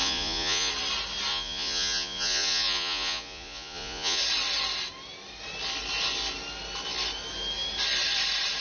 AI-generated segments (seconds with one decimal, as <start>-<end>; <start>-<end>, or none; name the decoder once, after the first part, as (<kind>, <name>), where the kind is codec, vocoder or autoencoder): 0.0-0.7 (vocoder, Vocos); 1.3-4.2